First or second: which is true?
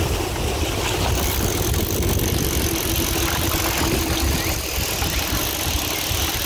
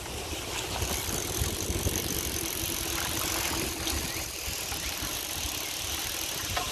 first